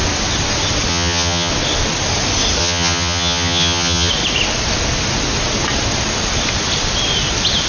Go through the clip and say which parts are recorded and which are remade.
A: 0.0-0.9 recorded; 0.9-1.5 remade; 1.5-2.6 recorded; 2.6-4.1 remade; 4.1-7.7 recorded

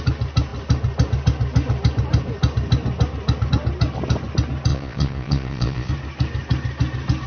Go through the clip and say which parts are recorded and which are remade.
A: 0.0-4.7 recorded; 4.7-5.9 remade; 5.9-7.3 recorded